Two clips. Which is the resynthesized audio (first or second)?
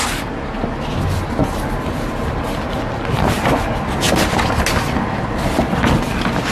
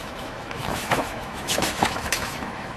second